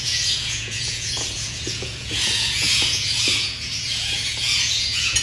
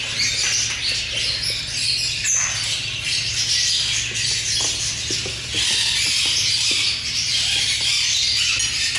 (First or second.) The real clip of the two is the second